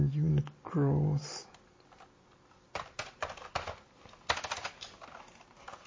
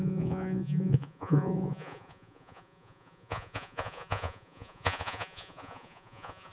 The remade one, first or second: second